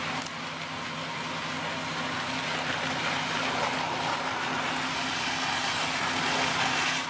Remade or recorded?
recorded